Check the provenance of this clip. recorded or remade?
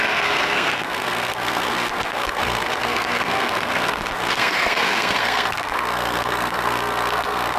remade